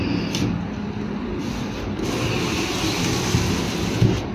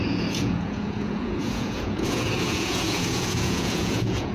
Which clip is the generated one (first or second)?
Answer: second